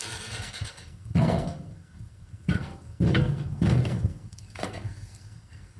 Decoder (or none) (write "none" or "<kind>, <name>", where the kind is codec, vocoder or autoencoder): codec, SNAC